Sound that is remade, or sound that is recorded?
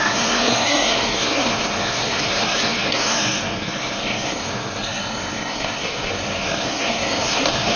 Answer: remade